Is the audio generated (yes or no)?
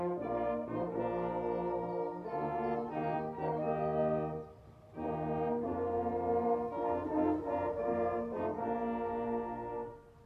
no